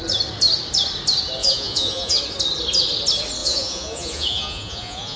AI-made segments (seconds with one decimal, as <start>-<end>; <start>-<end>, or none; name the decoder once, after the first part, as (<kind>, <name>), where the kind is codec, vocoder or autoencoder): 1.4-2.2 (vocoder, Vocos); 3.4-5.2